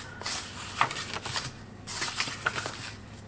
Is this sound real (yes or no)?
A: yes